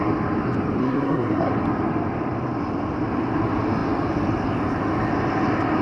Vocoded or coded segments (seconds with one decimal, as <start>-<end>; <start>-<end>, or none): 0.8-1.5